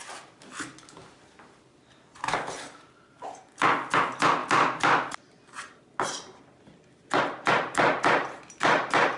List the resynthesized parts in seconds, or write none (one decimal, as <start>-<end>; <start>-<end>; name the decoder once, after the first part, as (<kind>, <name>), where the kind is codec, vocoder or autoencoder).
none